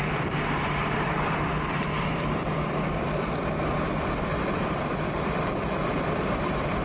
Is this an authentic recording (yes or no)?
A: no